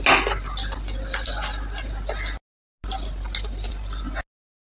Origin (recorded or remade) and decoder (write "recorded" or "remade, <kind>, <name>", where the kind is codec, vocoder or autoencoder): recorded